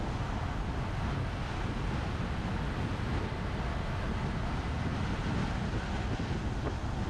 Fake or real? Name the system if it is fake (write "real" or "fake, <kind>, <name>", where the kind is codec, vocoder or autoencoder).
real